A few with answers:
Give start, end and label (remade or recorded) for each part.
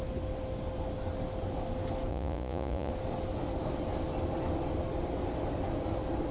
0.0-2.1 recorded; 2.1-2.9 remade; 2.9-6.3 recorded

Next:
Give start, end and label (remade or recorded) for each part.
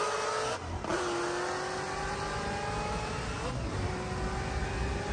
0.0-5.1 recorded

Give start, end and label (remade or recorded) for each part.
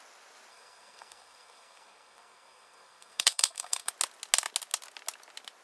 0.0-0.5 recorded; 0.5-3.9 remade; 3.9-5.6 recorded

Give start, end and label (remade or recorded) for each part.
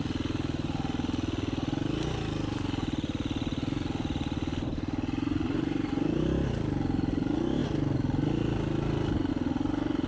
0.0-10.1 recorded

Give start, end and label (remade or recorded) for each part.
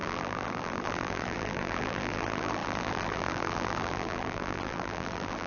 0.0-5.5 remade